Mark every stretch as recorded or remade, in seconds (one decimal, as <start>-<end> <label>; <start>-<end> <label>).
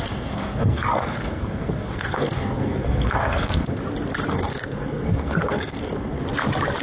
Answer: 0.0-3.8 remade; 3.8-4.3 recorded; 4.3-6.2 remade; 6.2-6.8 recorded